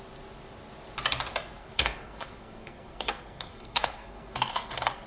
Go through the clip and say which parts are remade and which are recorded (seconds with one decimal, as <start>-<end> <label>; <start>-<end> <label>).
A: 0.0-1.6 recorded; 1.6-5.1 remade